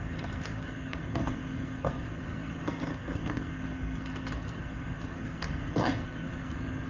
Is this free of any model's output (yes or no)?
no